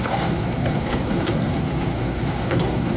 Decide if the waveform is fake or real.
fake